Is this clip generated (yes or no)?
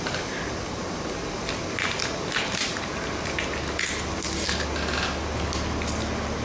no